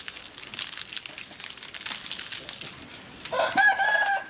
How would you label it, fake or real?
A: real